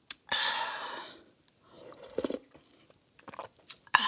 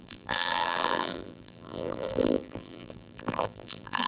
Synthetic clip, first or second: second